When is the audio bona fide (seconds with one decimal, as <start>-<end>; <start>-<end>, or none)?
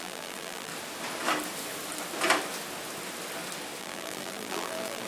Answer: 0.7-3.8